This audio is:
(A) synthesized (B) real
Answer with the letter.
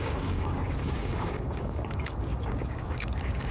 A